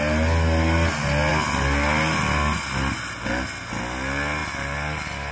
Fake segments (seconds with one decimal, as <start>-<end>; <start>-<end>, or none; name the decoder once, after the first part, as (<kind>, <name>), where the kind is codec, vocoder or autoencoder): none